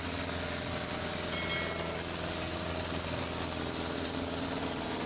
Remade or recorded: recorded